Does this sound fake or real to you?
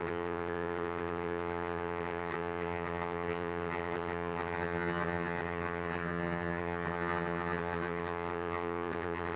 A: fake